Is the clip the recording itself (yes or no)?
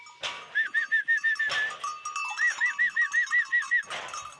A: yes